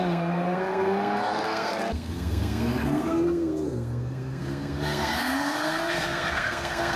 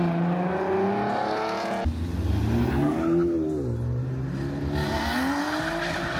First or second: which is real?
second